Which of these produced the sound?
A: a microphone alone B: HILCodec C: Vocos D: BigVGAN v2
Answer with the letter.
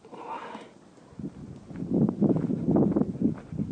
A